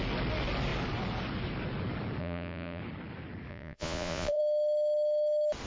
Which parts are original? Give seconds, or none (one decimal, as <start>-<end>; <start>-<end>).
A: 0.0-2.2; 2.8-3.5; 4.4-5.7

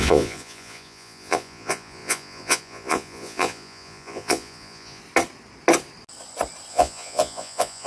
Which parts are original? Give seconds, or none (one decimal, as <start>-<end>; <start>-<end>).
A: 5.0-6.7

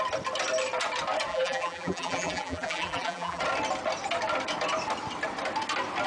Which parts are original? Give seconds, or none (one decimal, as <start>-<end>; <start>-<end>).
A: 0.0-1.3; 3.4-6.1

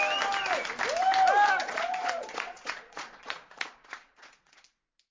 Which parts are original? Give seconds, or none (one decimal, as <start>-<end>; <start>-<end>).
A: 0.0-1.6; 4.6-5.1

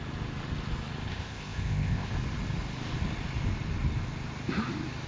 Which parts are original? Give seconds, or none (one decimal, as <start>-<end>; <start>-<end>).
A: 0.0-1.1; 2.1-5.1

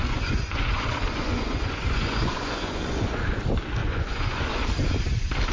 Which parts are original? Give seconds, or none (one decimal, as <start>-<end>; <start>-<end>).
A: 3.3-3.8; 4.5-5.5

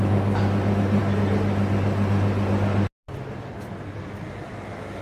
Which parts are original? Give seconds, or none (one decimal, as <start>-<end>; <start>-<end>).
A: 0.0-5.0

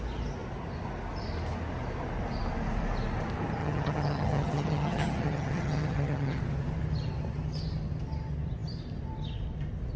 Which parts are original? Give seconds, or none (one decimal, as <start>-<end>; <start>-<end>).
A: 0.0-3.6; 6.4-10.0